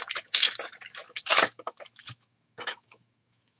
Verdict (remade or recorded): remade